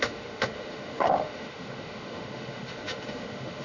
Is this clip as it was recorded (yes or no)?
no